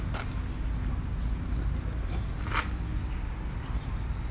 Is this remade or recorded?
recorded